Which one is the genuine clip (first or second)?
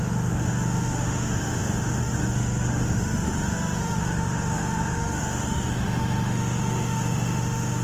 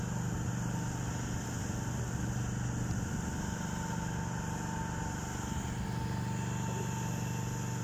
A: second